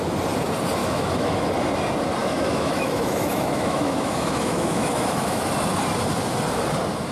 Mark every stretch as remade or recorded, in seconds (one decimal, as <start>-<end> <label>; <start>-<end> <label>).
0.0-0.8 recorded; 0.8-1.5 remade; 1.5-2.2 recorded; 2.2-5.5 remade; 5.5-7.1 recorded